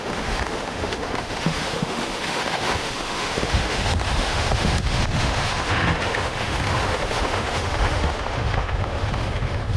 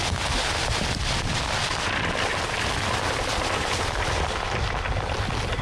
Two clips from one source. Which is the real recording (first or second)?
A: second